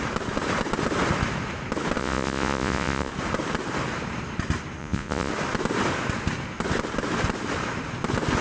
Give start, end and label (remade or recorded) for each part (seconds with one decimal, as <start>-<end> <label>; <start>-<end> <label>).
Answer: 0.0-2.0 recorded; 2.0-3.1 remade; 3.1-4.8 recorded; 4.8-5.3 remade; 5.3-8.4 recorded